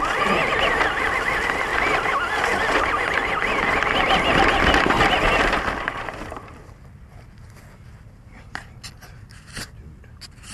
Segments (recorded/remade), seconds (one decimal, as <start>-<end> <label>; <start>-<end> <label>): 0.0-10.5 recorded